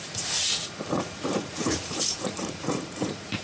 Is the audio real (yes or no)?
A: no